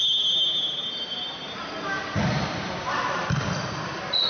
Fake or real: real